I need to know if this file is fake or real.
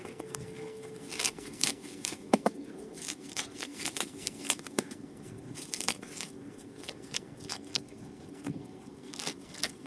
fake